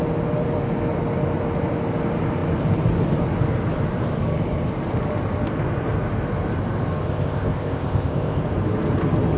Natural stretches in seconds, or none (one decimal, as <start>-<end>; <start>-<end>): 0.0-7.1; 8.4-9.4